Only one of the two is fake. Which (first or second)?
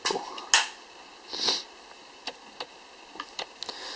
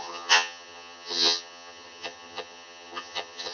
second